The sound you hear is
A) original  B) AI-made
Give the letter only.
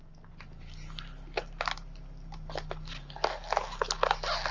A